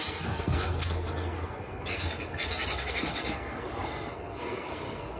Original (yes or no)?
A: no